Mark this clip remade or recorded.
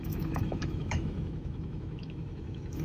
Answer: remade